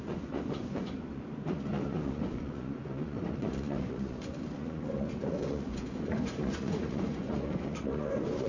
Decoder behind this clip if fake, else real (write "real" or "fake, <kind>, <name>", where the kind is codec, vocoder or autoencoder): fake, vocoder, Vocos